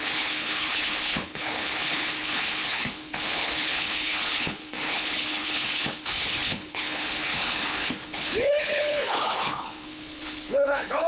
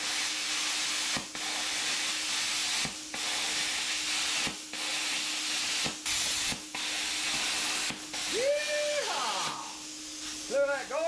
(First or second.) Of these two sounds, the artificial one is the first